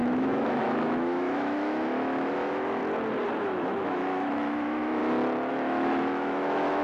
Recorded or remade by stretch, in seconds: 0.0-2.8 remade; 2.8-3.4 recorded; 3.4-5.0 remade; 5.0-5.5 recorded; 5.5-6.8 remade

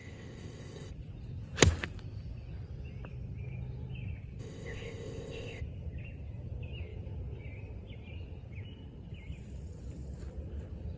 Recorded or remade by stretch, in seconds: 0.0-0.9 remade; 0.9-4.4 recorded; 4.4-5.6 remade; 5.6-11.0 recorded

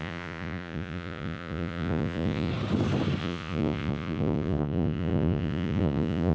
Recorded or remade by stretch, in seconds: 0.0-2.5 remade; 2.5-3.2 recorded; 3.2-6.3 remade